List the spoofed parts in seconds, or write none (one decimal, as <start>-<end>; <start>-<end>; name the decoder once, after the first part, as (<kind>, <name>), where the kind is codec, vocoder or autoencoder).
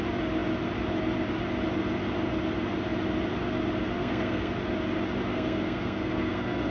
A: 4.0-4.5 (codec, SNAC); 5.3-6.7